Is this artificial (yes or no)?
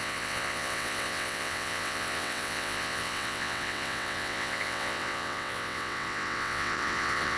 yes